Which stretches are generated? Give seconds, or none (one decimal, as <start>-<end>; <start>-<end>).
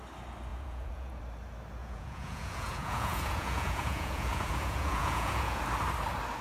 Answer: 0.5-1.2; 1.8-5.6